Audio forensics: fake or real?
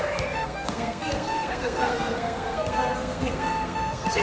fake